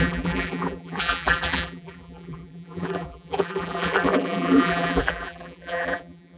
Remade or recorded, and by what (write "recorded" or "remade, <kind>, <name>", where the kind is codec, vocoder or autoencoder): remade, vocoder, BigVGAN v2